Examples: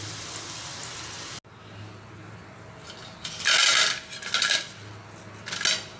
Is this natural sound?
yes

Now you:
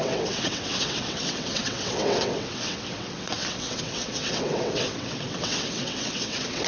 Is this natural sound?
no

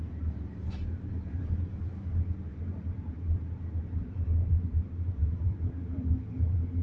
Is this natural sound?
no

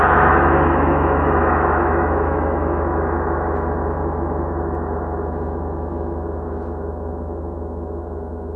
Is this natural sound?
no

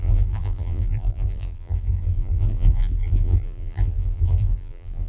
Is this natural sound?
no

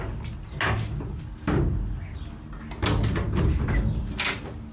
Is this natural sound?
yes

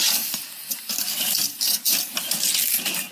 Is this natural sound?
yes